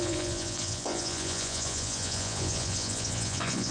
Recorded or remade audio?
remade